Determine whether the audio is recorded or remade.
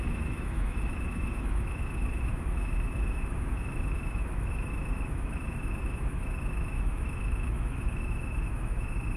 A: remade